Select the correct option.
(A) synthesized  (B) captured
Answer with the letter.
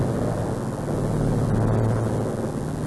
B